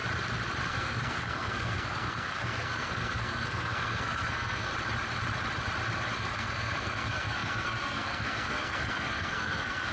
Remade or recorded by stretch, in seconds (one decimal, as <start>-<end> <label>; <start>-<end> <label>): 0.0-0.6 recorded; 0.6-4.7 remade; 4.7-6.2 recorded; 6.2-9.9 remade